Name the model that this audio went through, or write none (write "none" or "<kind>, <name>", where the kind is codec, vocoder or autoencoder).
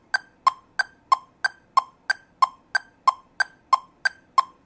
none